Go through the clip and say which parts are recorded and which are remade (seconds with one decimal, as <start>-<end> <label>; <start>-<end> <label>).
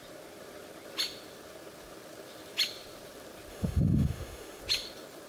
0.0-3.5 recorded; 3.5-4.6 remade; 4.6-5.3 recorded